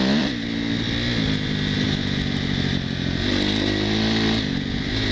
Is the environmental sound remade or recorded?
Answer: recorded